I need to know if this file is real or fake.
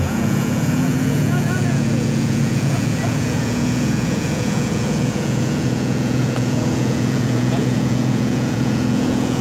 fake